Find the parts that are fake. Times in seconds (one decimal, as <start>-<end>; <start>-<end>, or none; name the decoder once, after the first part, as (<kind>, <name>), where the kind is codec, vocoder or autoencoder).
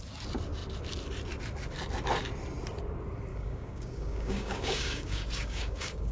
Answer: 3.3-6.1 (codec, DAC)